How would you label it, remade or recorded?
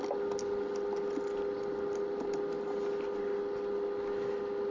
recorded